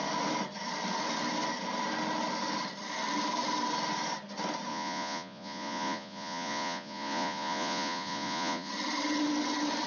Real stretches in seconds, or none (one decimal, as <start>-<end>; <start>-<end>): 0.0-4.7; 8.7-9.9